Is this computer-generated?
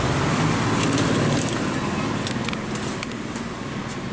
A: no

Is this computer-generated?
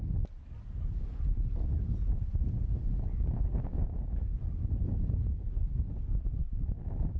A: no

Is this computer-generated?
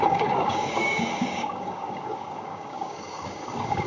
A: yes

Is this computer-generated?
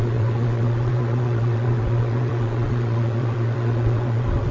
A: yes